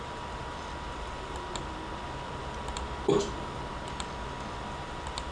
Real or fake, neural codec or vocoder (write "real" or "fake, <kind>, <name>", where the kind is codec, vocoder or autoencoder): real